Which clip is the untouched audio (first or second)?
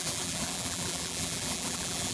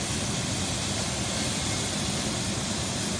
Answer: second